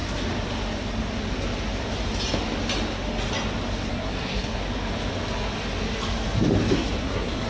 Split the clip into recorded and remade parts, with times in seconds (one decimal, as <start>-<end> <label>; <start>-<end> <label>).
0.0-3.9 recorded; 3.9-4.6 remade; 4.6-7.0 recorded; 7.0-7.5 remade